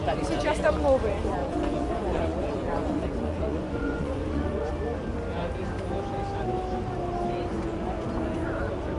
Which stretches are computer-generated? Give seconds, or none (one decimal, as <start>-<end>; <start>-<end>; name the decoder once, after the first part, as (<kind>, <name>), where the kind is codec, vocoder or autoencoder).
1.4-4.7 (vocoder, Vocos); 7.5-8.5